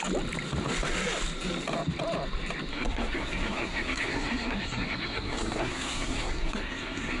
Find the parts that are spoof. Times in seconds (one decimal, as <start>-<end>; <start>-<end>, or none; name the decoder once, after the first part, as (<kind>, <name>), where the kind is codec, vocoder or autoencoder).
2.7-7.2 (codec, SNAC)